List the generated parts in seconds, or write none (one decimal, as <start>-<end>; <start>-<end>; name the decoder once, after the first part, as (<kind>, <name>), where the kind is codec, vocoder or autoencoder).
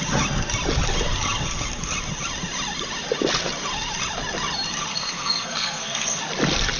4.9-6.2 (codec, SNAC)